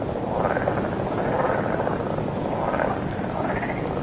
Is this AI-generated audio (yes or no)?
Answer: no